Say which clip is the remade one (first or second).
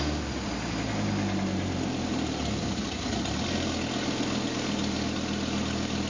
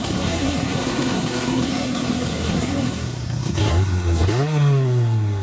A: second